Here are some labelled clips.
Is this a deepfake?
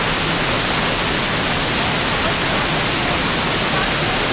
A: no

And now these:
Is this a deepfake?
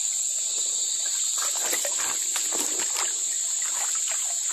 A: no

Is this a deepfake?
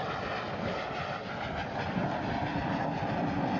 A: no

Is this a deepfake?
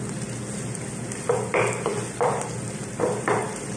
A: no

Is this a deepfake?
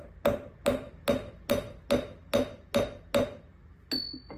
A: no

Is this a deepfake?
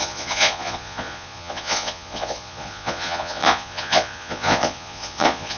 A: yes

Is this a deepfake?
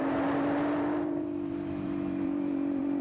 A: yes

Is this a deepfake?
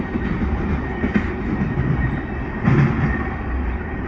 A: no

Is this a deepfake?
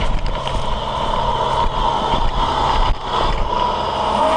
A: no